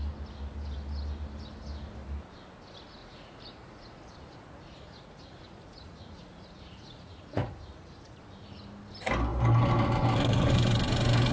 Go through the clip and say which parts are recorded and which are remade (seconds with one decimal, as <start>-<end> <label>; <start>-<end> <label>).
0.0-3.0 recorded; 3.0-8.2 remade; 8.2-11.3 recorded